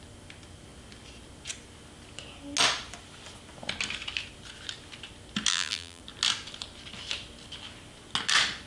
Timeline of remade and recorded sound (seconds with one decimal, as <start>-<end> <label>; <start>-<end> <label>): 0.0-5.5 recorded; 5.5-6.0 remade; 6.0-8.7 recorded